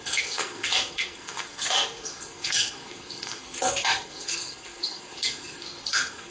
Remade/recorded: remade